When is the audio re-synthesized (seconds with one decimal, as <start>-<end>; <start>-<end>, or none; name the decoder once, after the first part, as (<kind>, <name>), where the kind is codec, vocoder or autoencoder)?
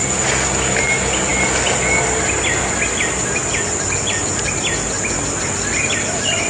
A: none